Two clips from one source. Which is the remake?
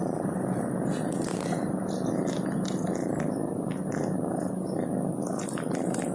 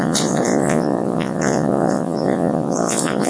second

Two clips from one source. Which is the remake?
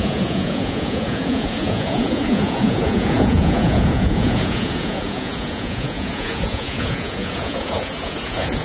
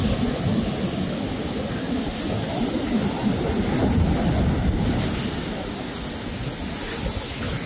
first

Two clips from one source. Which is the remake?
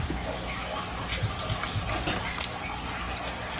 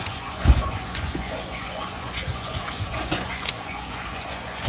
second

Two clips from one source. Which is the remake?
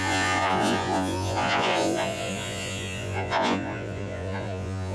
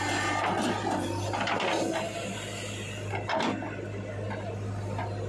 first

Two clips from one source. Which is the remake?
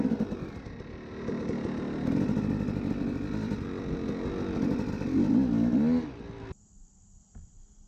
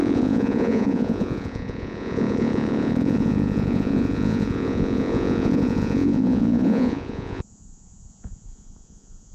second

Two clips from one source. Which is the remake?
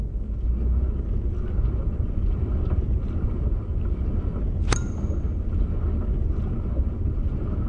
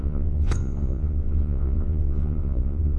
second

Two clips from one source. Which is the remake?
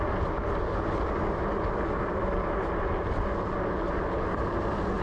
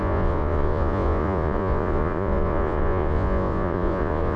second